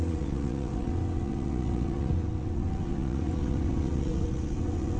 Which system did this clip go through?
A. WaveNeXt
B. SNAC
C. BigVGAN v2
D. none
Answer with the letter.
A